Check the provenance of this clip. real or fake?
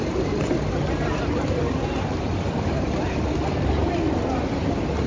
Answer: real